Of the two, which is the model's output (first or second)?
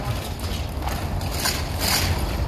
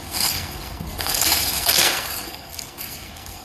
second